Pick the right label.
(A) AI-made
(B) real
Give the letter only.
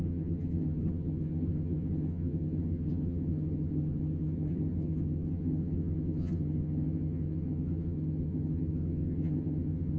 A